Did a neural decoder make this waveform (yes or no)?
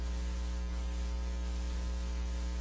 no